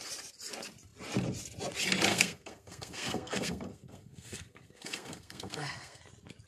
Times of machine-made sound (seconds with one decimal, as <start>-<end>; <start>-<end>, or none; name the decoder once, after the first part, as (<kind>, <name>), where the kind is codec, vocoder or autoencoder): 2.1-6.0 (codec, SNAC)